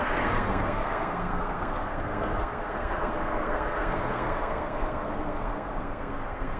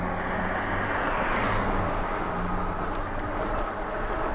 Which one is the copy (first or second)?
first